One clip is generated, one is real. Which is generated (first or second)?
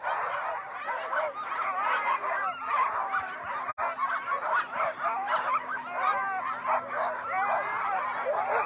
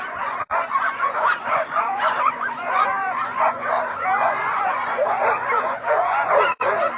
second